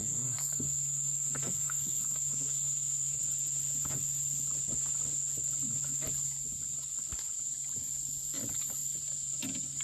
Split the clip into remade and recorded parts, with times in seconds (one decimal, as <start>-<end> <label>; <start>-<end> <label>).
0.0-3.2 remade; 3.2-9.8 recorded